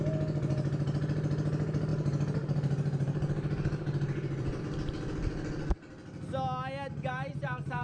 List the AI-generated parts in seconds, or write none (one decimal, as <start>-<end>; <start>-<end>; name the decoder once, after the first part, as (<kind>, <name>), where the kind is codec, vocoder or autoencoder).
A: 1.9-4.6 (vocoder, BigVGAN v2); 7.1-7.8

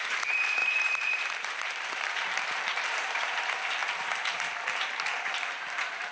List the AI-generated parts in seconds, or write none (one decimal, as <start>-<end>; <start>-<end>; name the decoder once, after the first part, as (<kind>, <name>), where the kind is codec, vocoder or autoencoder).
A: 0.0-6.1 (vocoder, BigVGAN v2)